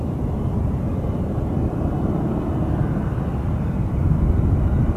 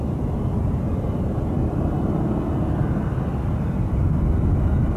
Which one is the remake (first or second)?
first